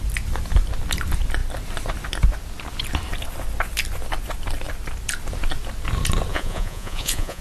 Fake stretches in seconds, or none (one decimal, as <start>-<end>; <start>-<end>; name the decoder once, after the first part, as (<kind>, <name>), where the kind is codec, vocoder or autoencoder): 6.3-7.4 (vocoder, Vocos)